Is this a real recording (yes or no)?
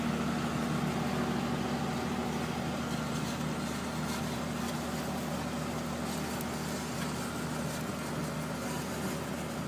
yes